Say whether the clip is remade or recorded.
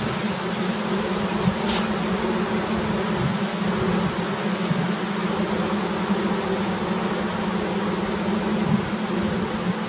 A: recorded